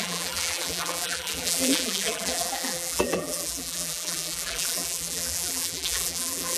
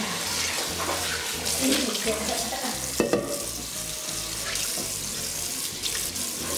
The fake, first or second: first